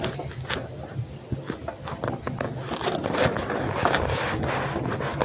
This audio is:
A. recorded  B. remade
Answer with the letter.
A